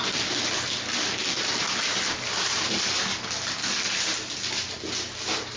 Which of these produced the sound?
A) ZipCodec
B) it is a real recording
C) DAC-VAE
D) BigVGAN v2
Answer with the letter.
B